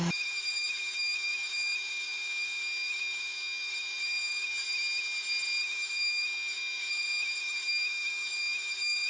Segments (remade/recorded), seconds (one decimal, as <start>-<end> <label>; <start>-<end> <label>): 0.0-4.5 remade; 4.5-5.6 recorded; 5.6-9.1 remade